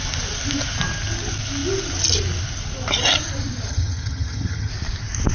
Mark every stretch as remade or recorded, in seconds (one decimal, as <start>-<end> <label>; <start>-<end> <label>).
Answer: 0.0-3.7 recorded; 3.7-4.7 remade; 4.7-5.3 recorded